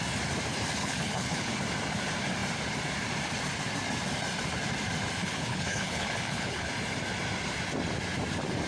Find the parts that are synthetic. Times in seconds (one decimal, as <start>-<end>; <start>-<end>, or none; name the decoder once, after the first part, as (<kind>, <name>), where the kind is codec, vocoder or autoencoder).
0.8-1.6 (codec, HILCodec); 5.2-6.7